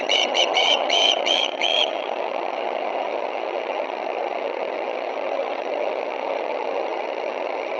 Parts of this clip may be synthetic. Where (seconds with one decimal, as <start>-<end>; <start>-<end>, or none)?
0.0-7.8